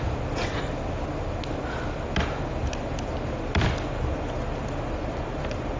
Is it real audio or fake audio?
real